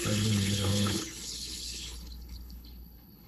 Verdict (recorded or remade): remade